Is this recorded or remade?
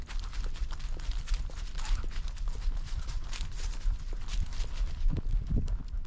recorded